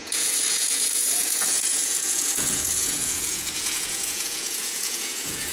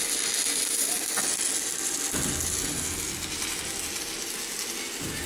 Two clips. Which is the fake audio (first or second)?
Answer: first